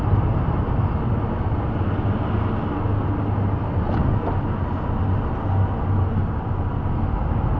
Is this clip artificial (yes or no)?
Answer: no